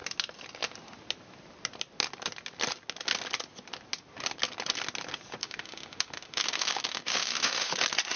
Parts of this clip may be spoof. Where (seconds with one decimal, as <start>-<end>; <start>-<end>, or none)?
5.4-7.7